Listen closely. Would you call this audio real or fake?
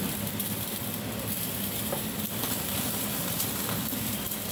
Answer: fake